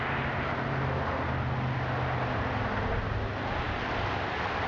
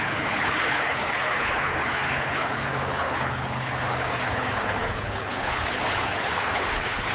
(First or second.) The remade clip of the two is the second